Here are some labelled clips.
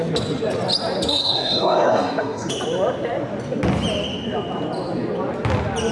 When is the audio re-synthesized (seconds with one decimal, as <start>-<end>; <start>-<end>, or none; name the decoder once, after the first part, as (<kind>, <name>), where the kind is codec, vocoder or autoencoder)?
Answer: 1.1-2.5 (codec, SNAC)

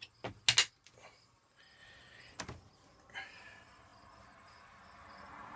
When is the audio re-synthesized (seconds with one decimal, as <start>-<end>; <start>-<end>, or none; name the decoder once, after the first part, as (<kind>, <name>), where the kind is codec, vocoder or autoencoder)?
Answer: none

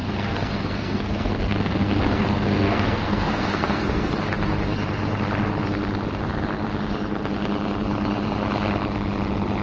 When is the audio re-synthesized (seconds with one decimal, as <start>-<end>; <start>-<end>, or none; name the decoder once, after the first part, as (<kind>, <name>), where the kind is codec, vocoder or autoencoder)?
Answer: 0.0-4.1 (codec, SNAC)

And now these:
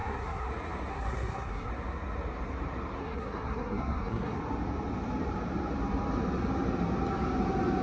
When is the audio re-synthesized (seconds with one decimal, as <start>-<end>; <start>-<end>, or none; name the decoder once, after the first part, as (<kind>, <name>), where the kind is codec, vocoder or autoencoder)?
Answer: 0.0-0.5 (codec, SNAC); 0.9-1.7; 3.0-4.4

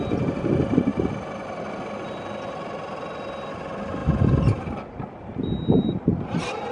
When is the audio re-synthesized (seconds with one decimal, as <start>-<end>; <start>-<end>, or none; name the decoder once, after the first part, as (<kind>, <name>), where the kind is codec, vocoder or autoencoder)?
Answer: none